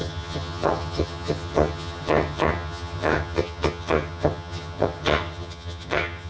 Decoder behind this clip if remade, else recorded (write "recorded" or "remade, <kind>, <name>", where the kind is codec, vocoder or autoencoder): remade, vocoder, HiFi-GAN